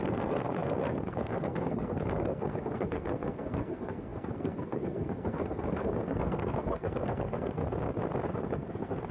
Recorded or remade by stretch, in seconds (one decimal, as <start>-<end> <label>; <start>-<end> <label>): 0.0-7.6 remade; 7.6-8.3 recorded; 8.3-9.1 remade

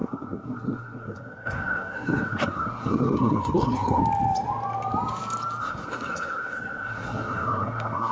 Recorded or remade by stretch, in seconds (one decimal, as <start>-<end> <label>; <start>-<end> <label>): 0.0-4.0 remade; 4.0-5.6 recorded; 5.6-8.1 remade

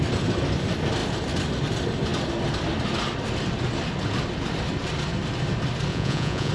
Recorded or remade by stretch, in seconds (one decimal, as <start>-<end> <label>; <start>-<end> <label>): 0.0-5.9 recorded; 5.9-6.5 remade

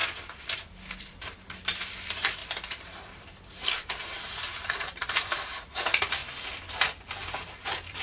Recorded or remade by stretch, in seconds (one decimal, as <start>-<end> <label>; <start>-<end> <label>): 0.0-1.0 recorded; 1.0-6.2 remade; 6.2-6.7 recorded; 6.7-8.0 remade

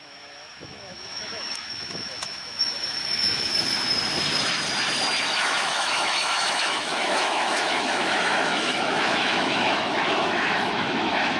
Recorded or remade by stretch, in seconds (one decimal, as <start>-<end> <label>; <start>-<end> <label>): 0.0-3.5 remade; 3.5-5.2 recorded; 5.2-11.4 remade

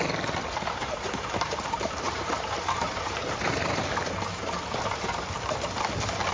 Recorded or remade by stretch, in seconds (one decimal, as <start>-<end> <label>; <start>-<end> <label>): 0.0-0.8 recorded; 0.8-3.8 remade; 3.8-6.3 recorded

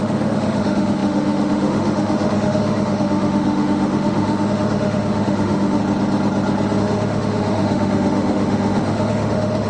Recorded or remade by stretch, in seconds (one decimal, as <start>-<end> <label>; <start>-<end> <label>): 0.0-5.8 remade; 5.8-6.8 recorded; 6.8-9.7 remade